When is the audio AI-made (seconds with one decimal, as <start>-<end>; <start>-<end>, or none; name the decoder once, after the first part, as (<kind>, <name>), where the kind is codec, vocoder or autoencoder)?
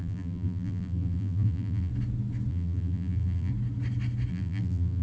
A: 0.0-1.9 (vocoder, BigVGAN v2); 2.5-3.5; 4.3-5.0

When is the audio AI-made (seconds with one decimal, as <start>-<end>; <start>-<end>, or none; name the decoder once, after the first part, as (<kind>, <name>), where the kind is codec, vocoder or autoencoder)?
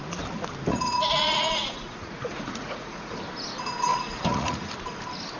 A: 0.7-3.2 (vocoder, Vocos); 3.9-4.7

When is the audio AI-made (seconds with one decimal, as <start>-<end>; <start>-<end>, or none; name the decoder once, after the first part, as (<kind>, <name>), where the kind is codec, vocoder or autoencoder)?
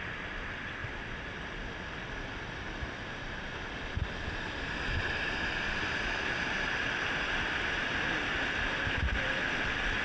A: none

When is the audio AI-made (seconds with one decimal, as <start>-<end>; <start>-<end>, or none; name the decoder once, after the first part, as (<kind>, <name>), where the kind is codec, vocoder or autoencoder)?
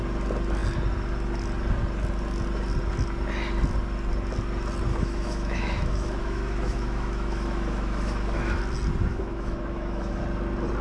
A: 4.9-8.6 (autoencoder, DAC-VAE); 9.1-10.2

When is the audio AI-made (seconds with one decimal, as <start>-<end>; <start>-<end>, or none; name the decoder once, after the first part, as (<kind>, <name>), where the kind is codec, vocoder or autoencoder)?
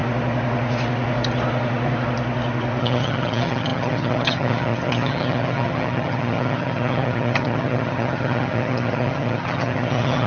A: 2.8-10.3 (vocoder, HiFi-GAN)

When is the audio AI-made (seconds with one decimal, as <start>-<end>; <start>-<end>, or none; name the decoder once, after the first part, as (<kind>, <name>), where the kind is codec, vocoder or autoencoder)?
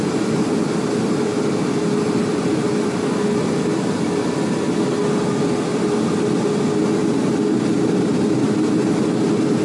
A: none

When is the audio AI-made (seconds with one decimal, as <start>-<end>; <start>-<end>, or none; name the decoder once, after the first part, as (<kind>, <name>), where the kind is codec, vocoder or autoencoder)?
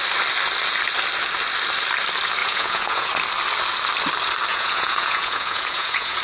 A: 2.4-3.1 (vocoder, Vocos); 4.5-6.2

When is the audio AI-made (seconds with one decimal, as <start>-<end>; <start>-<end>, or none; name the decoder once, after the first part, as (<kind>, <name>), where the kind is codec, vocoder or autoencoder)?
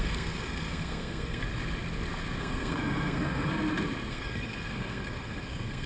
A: 0.0-1.4 (codec, SNAC); 2.4-3.5; 4.1-5.9